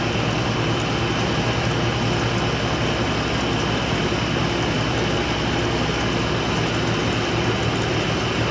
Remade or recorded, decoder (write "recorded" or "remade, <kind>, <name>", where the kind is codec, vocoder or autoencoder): recorded